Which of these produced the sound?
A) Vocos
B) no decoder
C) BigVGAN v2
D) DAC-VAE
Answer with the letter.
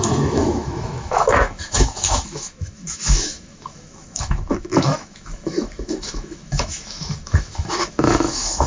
D